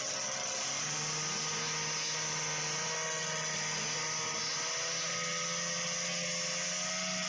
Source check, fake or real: real